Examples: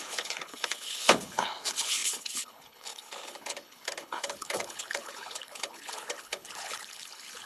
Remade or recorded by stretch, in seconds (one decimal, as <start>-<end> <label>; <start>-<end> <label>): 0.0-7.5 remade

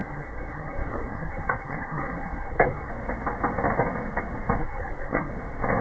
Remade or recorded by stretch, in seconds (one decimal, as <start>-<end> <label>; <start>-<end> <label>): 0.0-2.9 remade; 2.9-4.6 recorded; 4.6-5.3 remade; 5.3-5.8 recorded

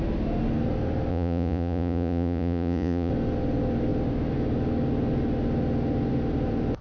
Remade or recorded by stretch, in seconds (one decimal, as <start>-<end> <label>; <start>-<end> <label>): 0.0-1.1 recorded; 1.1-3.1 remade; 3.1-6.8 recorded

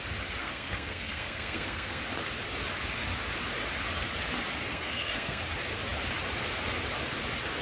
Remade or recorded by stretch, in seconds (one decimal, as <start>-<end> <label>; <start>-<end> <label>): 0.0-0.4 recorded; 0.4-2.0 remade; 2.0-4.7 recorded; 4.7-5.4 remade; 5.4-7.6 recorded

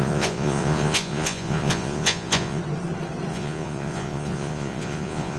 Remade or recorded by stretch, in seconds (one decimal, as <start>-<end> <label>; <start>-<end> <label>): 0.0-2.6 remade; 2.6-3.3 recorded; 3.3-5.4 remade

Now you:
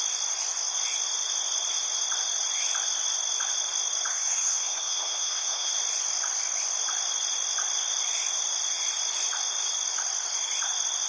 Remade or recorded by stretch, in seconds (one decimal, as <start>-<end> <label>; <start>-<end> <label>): 0.0-4.1 recorded; 4.1-5.7 remade; 5.7-11.1 recorded

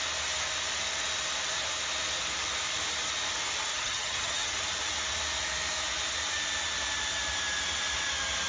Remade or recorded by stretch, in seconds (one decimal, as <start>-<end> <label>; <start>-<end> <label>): 0.0-3.7 recorded; 3.7-4.5 remade; 4.5-8.5 recorded

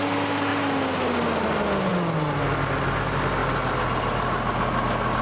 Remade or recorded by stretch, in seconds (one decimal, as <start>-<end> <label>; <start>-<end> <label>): 0.0-5.2 recorded